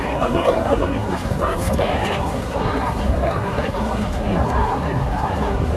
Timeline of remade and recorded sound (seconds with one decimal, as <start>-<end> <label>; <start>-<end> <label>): 0.0-5.8 remade